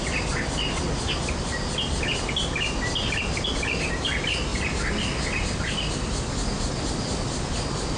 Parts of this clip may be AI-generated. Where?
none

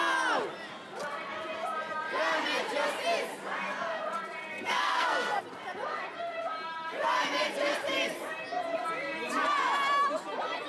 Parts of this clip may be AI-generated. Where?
4.4-5.4 (codec, SNAC)

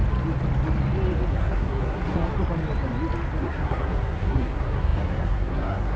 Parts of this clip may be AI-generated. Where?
1.3-2.3 (codec, SNAC); 3.4-6.0

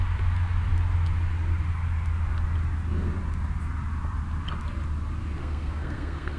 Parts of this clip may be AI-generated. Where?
5.4-6.4 (codec, SNAC)